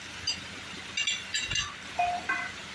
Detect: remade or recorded recorded